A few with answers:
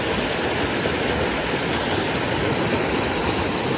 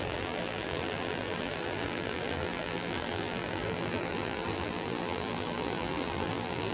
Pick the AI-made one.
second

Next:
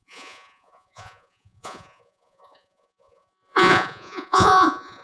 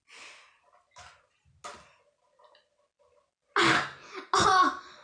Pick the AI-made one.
first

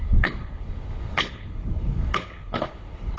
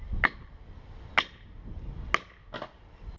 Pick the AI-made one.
first